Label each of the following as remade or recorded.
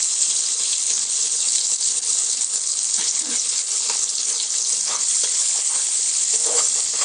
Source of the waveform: remade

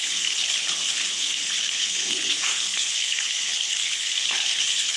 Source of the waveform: remade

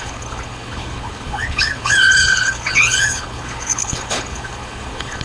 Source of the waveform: remade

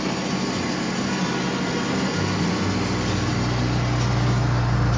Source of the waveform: recorded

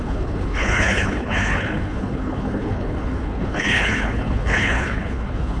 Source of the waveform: remade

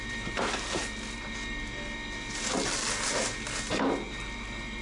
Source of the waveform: recorded